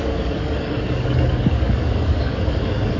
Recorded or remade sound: remade